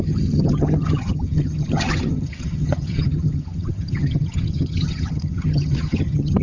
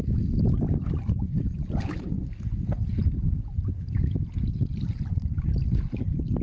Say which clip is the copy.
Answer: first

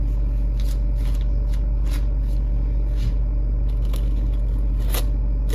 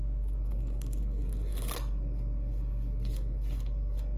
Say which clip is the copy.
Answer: second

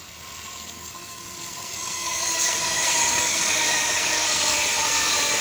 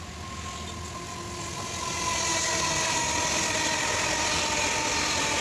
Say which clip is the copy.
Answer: first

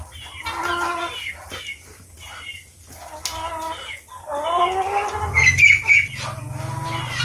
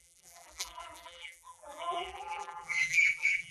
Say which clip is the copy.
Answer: second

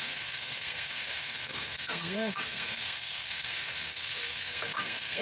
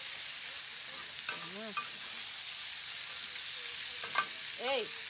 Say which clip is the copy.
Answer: first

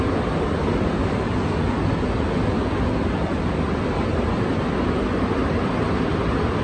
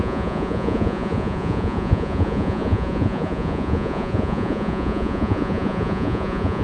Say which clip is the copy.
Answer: second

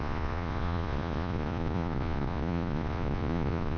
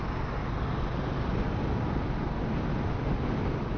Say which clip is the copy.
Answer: first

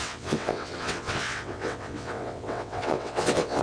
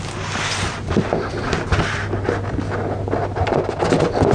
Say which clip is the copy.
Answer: first